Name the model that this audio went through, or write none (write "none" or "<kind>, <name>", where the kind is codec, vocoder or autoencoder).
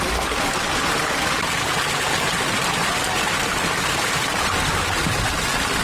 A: none